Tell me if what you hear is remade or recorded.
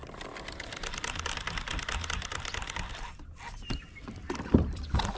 recorded